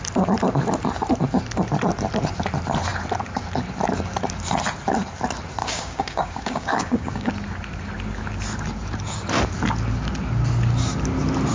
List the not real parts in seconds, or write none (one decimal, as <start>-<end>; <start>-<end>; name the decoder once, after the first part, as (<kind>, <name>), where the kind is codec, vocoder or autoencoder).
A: 5.6-7.3 (codec, DAC)